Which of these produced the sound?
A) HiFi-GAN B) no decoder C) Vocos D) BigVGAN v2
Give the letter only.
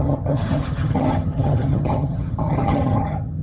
A